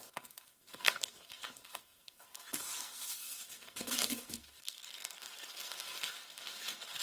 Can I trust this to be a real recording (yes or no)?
no